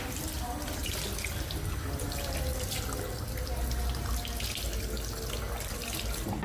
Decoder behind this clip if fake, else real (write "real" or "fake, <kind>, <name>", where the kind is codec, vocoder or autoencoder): real